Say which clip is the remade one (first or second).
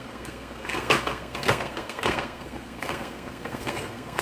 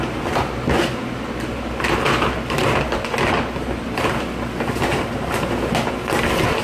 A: first